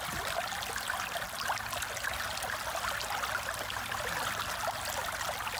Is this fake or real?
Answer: real